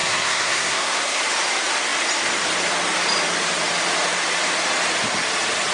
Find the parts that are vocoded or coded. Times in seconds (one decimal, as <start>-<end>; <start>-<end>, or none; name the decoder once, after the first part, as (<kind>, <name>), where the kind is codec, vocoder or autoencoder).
0.0-1.2 (codec, SNAC)